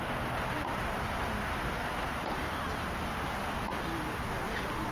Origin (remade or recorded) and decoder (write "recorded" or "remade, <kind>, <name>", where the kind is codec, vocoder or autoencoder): recorded